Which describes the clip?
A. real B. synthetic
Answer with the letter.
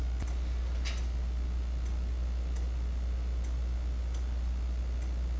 A